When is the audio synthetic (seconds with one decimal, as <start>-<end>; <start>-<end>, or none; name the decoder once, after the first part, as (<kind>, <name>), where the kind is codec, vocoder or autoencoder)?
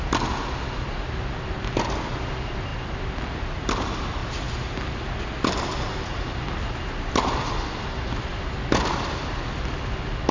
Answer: none